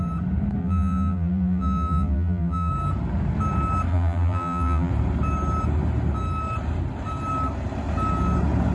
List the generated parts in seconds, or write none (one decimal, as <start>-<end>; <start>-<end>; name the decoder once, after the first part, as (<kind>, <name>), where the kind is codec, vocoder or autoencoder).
0.6-2.7 (vocoder, BigVGAN v2); 3.9-4.9